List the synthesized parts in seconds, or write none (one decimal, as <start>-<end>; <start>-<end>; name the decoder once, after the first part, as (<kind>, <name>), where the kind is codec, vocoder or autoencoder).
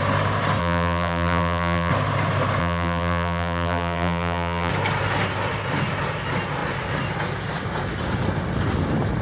0.6-1.9 (vocoder, BigVGAN v2); 2.6-4.7